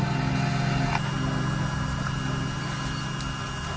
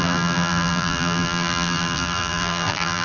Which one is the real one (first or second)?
first